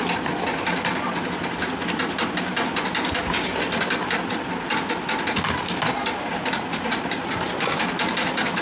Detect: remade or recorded recorded